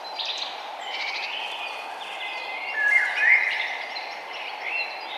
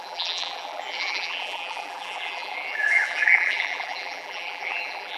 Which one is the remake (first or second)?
second